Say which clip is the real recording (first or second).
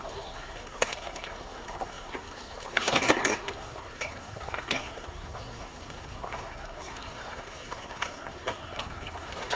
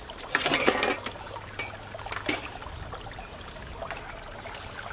second